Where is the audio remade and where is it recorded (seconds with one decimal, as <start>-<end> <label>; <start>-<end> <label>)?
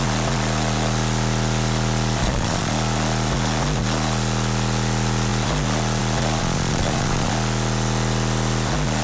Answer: 0.0-2.2 recorded; 2.2-2.7 remade; 2.7-6.4 recorded; 6.4-7.3 remade; 7.3-9.0 recorded